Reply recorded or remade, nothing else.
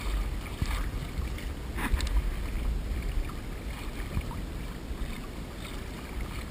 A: recorded